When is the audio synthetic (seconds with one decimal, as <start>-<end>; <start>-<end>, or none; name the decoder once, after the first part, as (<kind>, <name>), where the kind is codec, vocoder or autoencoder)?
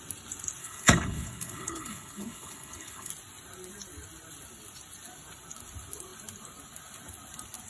0.6-3.1 (codec, HILCodec)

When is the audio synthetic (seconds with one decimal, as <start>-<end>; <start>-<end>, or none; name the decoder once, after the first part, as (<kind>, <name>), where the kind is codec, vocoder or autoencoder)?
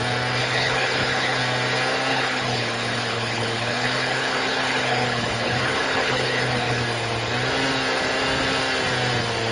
0.4-1.4 (codec, HILCodec); 2.1-6.8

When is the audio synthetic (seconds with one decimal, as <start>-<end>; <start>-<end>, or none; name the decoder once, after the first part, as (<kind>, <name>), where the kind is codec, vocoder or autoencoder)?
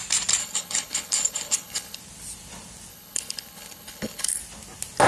0.4-2.0 (codec, HILCodec); 2.9-4.4